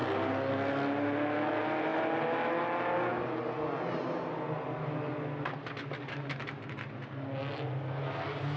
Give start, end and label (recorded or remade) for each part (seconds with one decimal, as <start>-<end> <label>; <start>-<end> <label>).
0.0-8.6 recorded